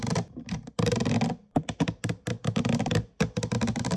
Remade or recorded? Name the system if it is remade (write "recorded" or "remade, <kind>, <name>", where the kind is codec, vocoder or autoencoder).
recorded